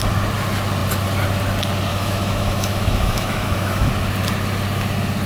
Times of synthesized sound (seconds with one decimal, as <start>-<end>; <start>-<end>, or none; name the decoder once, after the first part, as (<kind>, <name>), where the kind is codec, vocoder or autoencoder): 1.9-3.9 (autoencoder, DAC-VAE)